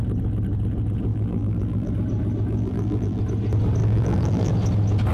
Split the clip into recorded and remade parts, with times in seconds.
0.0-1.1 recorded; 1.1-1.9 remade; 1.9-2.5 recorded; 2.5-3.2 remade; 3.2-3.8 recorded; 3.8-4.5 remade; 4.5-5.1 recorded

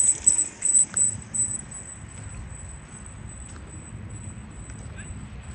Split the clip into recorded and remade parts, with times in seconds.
0.0-5.5 recorded